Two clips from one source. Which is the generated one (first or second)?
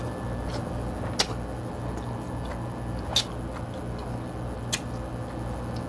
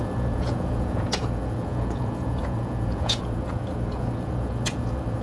second